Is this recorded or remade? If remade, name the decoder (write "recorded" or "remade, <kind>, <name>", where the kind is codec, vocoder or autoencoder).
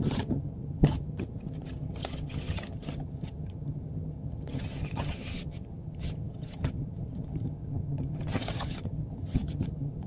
remade, vocoder, HiFi-GAN